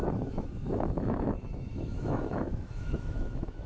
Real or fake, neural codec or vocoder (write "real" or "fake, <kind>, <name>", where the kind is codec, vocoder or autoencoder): fake, autoencoder, DAC-VAE